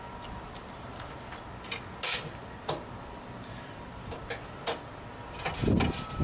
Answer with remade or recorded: recorded